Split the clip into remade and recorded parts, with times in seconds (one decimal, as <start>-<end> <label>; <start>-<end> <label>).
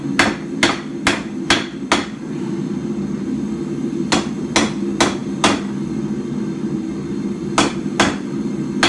0.0-8.9 recorded